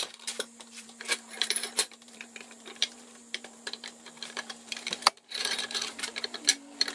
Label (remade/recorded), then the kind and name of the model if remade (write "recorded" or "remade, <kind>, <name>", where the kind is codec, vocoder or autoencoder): remade, vocoder, BigVGAN v2